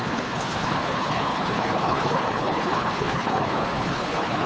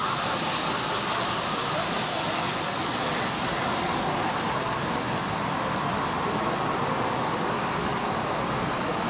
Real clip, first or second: second